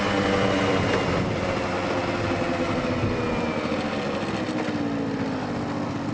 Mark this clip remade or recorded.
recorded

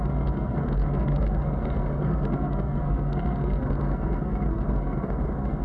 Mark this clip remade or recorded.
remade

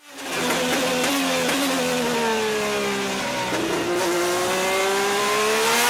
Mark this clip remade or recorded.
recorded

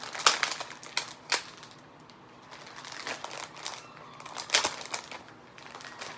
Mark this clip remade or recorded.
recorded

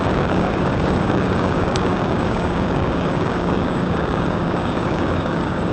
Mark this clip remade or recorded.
remade